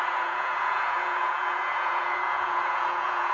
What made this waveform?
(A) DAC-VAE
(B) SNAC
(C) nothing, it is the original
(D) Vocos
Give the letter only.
D